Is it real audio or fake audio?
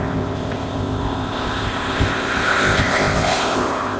fake